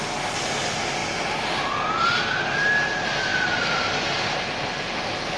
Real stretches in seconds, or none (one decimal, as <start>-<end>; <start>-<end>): 0.0-3.3; 4.0-5.4